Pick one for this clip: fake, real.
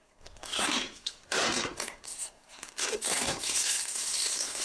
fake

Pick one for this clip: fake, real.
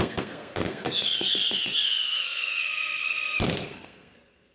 fake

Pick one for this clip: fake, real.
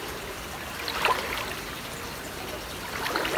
real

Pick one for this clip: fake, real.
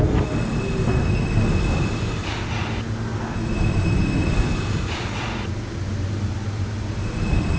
real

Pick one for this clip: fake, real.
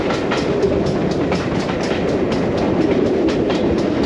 real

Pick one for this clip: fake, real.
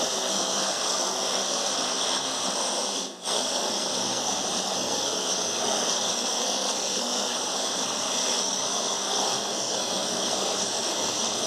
fake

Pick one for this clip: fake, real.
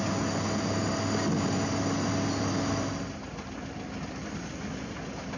real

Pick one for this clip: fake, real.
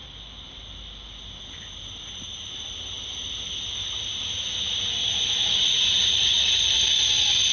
real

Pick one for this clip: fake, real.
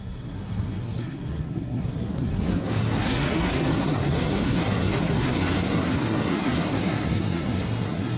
fake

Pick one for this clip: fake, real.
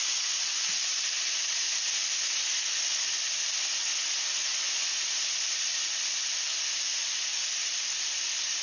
real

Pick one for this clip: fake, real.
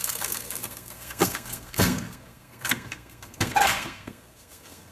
fake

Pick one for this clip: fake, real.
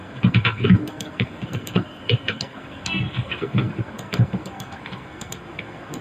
fake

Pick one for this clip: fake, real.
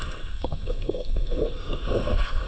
fake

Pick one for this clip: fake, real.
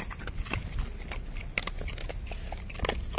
real